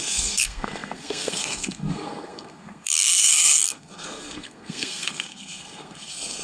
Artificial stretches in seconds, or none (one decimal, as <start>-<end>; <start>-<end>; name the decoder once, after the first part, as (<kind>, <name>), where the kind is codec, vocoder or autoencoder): 0.0-6.4 (codec, SNAC)